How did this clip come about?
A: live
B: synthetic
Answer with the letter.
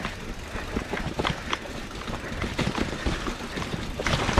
B